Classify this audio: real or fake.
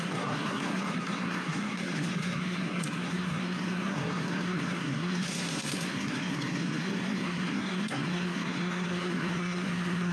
fake